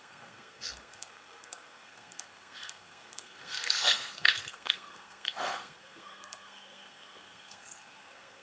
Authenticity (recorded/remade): remade